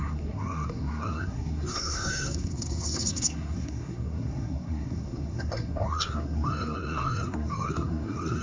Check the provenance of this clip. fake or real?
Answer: fake